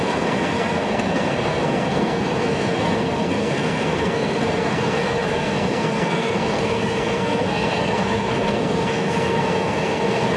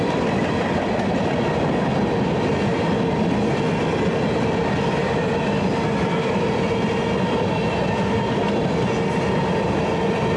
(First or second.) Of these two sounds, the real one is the second